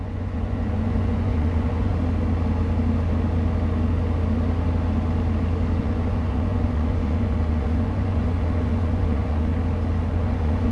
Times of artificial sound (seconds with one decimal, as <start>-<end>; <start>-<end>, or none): 0.0-1.9; 5.8-9.5; 10.1-10.7